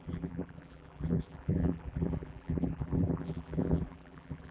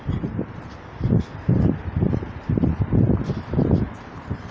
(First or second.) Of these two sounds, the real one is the second